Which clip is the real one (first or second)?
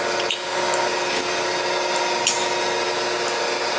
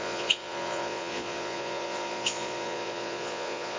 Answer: first